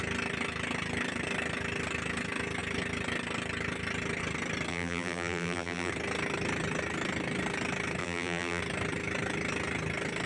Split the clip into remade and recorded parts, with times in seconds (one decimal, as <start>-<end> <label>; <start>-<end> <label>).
0.0-4.7 recorded; 4.7-5.9 remade; 5.9-8.0 recorded; 8.0-8.6 remade; 8.6-10.3 recorded